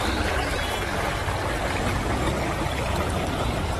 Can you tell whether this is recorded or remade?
recorded